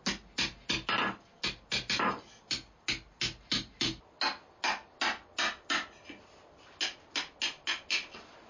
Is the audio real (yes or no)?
yes